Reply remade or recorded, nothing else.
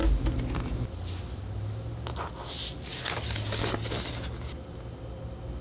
recorded